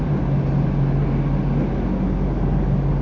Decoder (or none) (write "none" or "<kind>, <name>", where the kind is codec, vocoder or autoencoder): none